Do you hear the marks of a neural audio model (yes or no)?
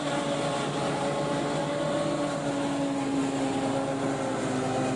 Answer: no